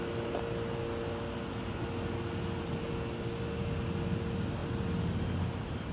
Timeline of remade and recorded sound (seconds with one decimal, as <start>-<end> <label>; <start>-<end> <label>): 0.0-5.9 recorded